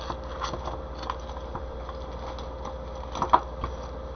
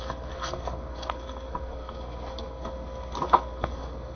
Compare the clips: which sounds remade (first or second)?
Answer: second